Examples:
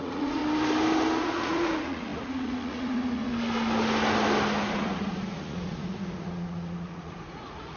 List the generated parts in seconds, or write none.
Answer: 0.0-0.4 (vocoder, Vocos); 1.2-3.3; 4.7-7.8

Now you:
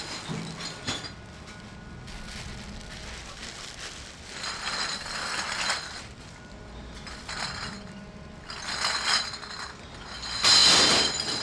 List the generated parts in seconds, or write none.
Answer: none

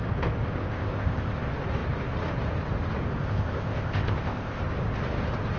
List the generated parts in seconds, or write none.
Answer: 0.6-1.4 (codec, ZipCodec); 3.2-4.6

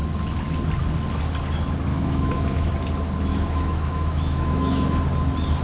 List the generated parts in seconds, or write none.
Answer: 1.9-2.7 (autoencoder, DAC-VAE); 3.3-5.0